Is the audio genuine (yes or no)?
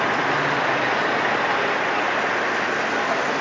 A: yes